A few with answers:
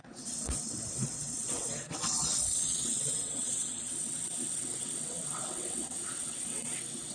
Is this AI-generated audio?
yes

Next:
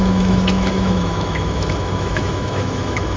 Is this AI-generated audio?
yes